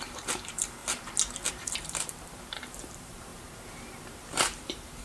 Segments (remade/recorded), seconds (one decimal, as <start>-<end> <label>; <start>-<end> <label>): 0.0-0.8 remade; 0.8-1.5 recorded; 1.5-5.0 remade